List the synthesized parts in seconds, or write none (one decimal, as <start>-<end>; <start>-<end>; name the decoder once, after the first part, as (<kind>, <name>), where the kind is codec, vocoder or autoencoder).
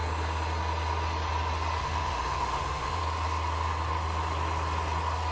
1.8-3.0 (autoencoder, DAC-VAE)